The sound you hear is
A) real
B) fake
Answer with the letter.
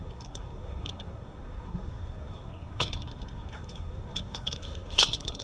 B